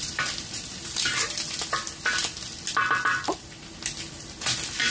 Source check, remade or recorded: recorded